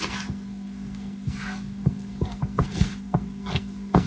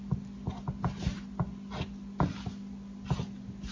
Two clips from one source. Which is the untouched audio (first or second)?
second